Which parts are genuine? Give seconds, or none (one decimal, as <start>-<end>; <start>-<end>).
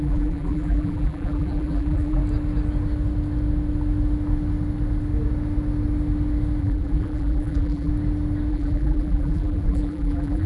2.2-6.6; 7.9-8.5